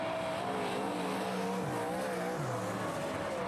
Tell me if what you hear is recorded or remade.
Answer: recorded